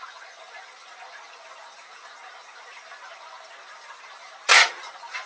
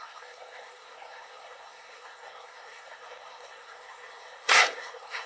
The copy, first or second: second